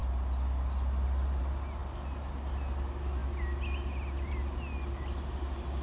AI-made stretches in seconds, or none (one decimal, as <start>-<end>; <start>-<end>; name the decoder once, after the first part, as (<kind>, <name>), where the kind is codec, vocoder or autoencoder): none